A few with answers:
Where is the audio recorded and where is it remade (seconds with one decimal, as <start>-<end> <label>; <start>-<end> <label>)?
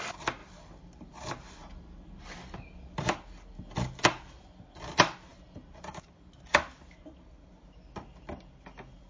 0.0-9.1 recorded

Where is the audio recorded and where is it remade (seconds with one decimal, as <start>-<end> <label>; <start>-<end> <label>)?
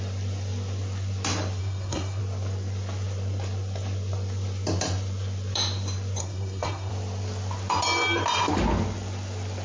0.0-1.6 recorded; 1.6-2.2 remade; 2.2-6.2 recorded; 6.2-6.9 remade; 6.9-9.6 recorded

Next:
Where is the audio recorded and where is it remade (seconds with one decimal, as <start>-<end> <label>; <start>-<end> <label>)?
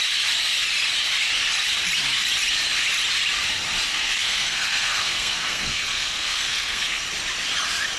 0.0-3.9 recorded; 3.9-7.0 remade; 7.0-8.0 recorded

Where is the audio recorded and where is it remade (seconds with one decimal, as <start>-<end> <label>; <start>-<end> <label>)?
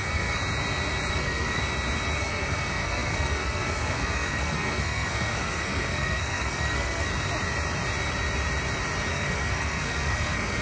0.0-0.4 remade; 0.4-1.1 recorded; 1.1-1.6 remade; 1.6-2.2 recorded; 2.2-7.1 remade; 7.1-9.1 recorded; 9.1-10.6 remade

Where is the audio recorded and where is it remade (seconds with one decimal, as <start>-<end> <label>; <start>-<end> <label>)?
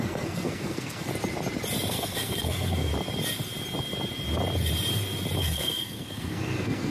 0.0-1.1 remade; 1.1-1.9 recorded; 1.9-2.9 remade; 2.9-5.4 recorded; 5.4-6.9 remade